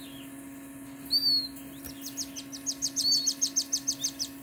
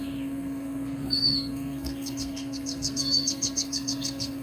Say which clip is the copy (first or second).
second